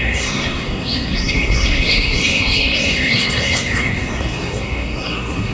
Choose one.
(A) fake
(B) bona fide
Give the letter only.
A